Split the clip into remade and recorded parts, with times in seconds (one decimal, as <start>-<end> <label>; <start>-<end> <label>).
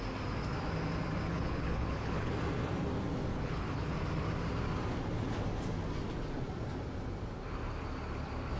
0.0-1.3 recorded; 1.3-2.3 remade; 2.3-3.3 recorded; 3.3-3.9 remade; 3.9-8.6 recorded